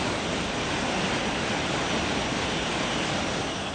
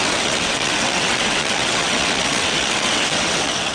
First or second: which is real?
first